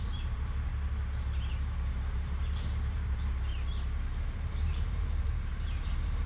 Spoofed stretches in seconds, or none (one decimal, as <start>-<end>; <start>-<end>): 0.0-0.7; 1.5-3.5; 4.3-6.3